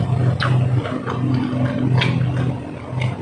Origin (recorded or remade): recorded